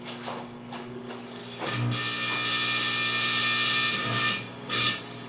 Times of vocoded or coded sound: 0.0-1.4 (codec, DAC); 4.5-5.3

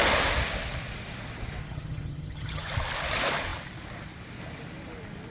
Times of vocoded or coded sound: 1.6-2.7 (vocoder, HiFi-GAN)